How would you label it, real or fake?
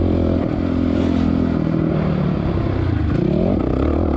real